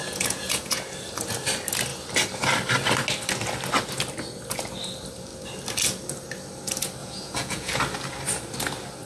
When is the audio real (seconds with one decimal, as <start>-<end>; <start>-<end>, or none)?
0.8-7.0; 7.8-9.1